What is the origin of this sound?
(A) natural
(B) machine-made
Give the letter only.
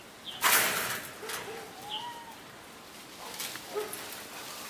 A